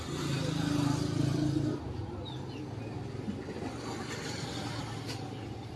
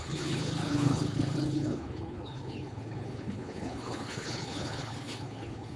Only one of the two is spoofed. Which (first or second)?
second